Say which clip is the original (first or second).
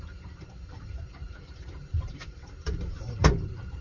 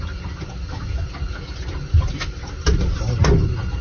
second